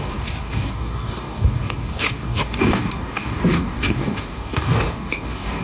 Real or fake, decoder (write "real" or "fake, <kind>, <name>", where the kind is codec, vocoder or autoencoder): fake, codec, DAC